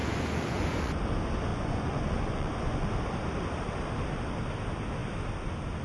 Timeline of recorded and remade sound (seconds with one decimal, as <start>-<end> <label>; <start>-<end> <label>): 0.0-1.0 remade; 1.0-1.5 recorded; 1.5-2.9 remade; 2.9-5.8 recorded